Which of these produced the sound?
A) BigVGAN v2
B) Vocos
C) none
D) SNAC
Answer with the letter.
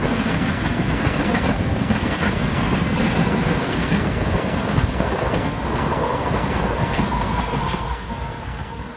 D